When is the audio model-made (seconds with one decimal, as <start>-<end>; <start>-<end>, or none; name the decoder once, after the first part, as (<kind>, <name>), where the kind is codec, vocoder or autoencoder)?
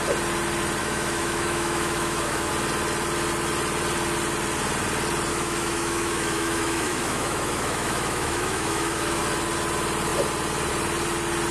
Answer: 0.8-2.5 (autoencoder, DAC-VAE); 5.3-9.2